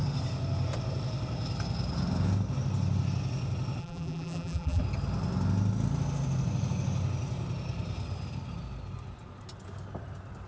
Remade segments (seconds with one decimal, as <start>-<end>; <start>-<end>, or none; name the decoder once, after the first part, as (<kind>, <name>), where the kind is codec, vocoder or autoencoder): 3.8-4.8 (vocoder, BigVGAN v2)